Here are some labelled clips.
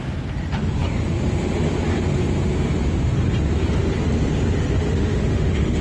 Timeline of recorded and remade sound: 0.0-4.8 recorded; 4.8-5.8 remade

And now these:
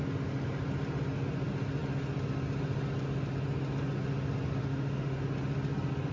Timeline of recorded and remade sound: 0.0-4.6 recorded; 4.6-5.2 remade; 5.2-6.1 recorded

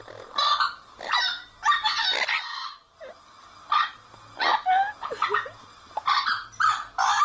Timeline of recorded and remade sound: 0.0-7.2 recorded

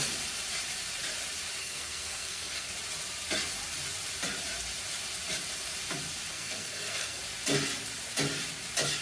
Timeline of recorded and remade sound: 0.0-1.6 recorded; 1.6-2.7 remade; 2.7-6.3 recorded; 6.3-7.2 remade; 7.2-9.0 recorded

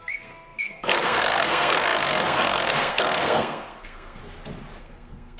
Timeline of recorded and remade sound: 0.0-4.2 remade; 4.2-4.8 recorded; 4.8-5.4 remade